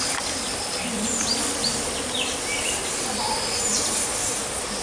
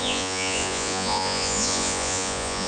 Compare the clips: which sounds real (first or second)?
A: first